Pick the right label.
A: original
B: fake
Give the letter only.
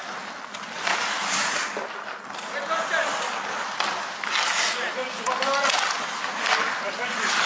A